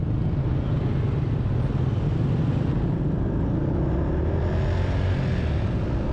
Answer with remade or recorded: recorded